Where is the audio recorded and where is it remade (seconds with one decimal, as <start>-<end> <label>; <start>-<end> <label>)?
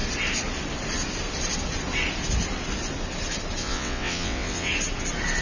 0.0-3.6 recorded; 3.6-4.7 remade; 4.7-5.4 recorded